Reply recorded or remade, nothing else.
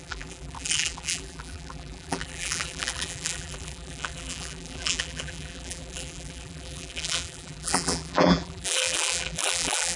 remade